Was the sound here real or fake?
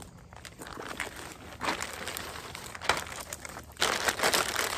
real